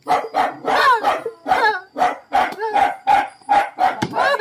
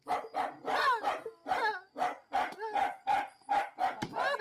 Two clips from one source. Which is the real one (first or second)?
second